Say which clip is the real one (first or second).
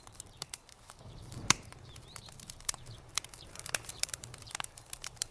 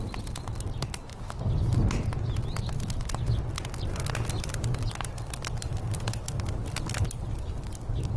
second